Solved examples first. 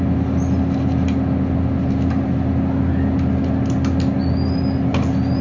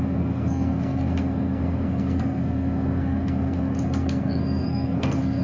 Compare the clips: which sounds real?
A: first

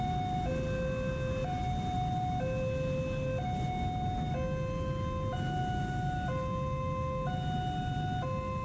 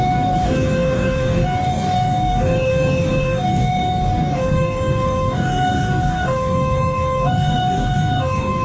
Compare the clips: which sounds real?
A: first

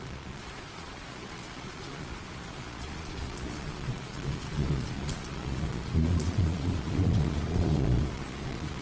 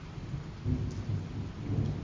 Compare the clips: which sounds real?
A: second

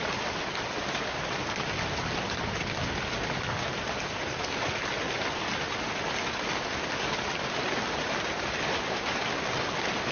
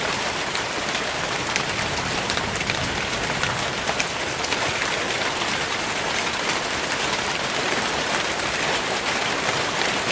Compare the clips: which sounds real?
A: first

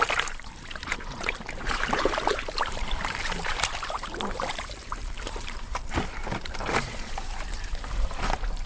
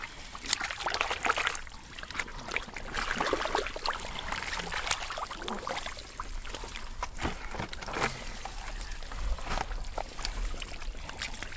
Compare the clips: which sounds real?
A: second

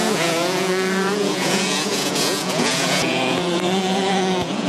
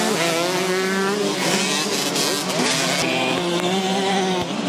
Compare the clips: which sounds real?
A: second